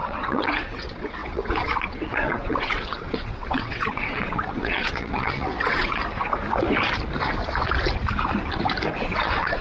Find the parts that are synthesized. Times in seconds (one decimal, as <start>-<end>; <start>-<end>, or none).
0.0-6.0; 9.0-9.6